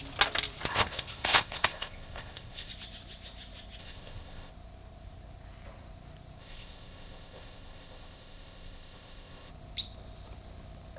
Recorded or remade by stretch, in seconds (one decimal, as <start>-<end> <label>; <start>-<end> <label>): 0.0-0.7 recorded; 0.7-2.7 remade; 2.7-3.8 recorded; 3.8-4.5 remade; 4.5-6.4 recorded; 6.4-9.5 remade; 9.5-11.0 recorded